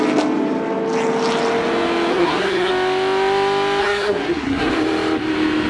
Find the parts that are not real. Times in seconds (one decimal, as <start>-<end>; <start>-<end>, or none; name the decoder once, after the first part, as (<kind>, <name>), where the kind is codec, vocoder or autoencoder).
2.1-2.7 (codec, SNAC); 3.8-4.7